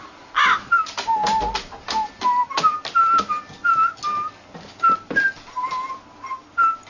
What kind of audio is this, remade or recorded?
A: recorded